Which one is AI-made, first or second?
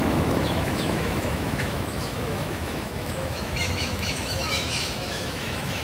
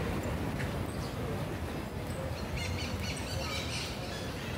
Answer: first